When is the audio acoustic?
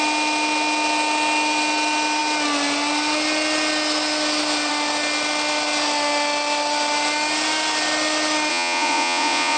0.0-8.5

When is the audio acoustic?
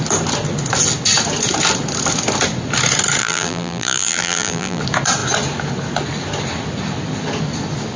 0.0-3.2; 4.8-8.0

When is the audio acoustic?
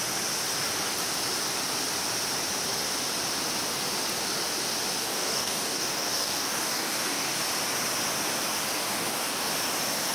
0.0-5.0; 7.4-8.8; 9.5-10.1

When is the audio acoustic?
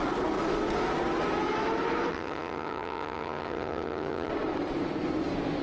0.0-2.1; 4.3-5.6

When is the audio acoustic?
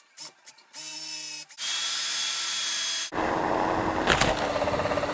0.0-5.1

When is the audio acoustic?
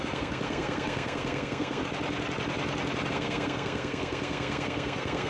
1.8-3.1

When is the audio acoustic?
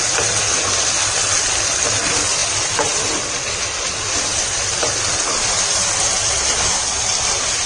0.0-2.4; 7.0-7.7